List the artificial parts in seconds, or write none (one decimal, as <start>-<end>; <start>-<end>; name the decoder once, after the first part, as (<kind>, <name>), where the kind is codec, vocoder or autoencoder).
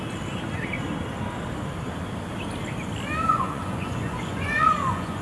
3.3-5.2 (vocoder, Vocos)